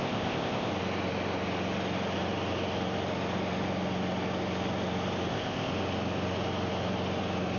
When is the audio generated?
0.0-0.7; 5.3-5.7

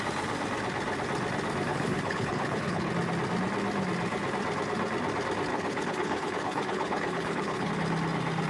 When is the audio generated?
1.7-2.9; 5.5-7.7